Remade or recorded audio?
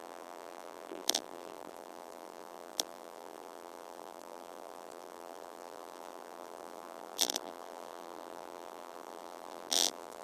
remade